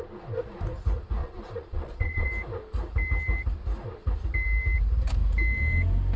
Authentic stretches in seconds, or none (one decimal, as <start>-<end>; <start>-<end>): 0.0-1.2; 2.3-6.2